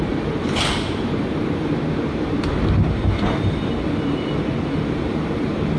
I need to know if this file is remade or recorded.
remade